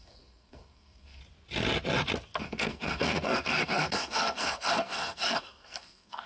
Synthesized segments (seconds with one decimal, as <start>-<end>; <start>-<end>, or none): 0.0-1.2; 2.4-6.3